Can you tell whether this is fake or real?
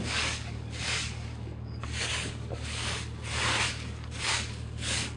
fake